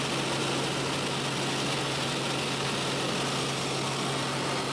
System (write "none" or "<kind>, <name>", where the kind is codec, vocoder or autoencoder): none